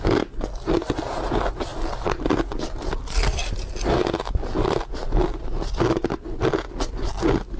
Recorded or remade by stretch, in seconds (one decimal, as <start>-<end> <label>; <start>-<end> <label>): 0.0-7.6 recorded